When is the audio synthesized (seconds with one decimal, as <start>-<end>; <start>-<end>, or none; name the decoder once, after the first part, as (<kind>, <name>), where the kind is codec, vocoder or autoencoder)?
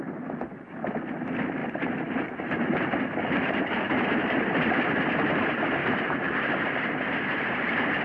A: 1.6-4.8 (vocoder, BigVGAN v2); 5.8-6.8; 7.3-8.0